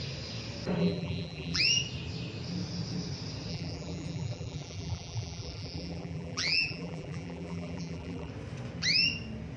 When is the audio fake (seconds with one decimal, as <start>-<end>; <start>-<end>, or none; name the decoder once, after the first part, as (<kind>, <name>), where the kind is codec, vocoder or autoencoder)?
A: 0.8-1.6 (vocoder, BigVGAN v2); 3.5-8.3